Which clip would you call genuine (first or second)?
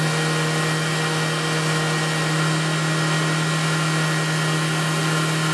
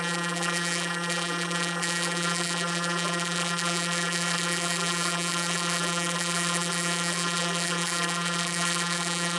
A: first